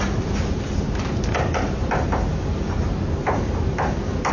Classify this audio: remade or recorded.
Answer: recorded